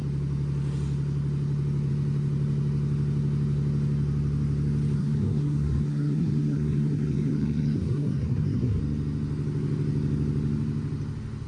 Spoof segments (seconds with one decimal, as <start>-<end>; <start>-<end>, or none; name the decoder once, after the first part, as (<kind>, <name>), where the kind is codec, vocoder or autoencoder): 5.0-8.8 (codec, SNAC)